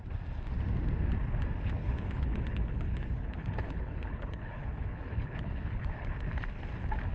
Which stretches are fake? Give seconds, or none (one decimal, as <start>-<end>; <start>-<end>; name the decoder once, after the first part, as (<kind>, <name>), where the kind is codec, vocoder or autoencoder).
1.8-6.1 (codec, HILCodec)

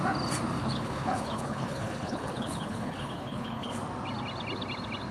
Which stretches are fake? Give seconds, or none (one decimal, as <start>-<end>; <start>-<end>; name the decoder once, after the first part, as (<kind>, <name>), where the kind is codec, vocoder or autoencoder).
0.6-3.7 (codec, HILCodec)

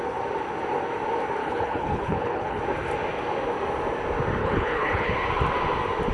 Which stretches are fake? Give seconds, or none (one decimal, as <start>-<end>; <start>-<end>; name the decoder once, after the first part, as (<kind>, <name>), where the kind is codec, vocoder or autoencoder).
1.4-2.6 (codec, HILCodec); 4.4-5.1

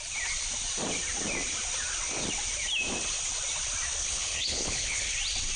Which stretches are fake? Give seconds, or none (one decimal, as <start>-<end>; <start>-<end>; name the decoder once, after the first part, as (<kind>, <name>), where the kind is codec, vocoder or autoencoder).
4.0-5.1 (codec, HILCodec)

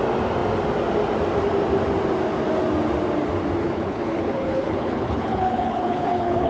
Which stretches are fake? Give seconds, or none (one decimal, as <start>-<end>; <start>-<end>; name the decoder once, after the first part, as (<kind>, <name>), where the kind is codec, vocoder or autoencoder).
3.6-6.5 (codec, HILCodec)